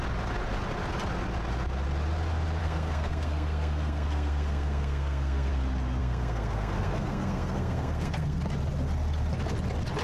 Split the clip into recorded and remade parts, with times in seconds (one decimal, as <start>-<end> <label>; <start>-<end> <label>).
0.0-2.6 recorded; 2.6-5.5 remade; 5.5-6.0 recorded; 6.0-8.4 remade; 8.4-10.0 recorded